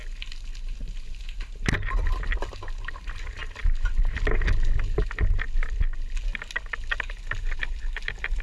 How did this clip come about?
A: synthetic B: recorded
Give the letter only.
B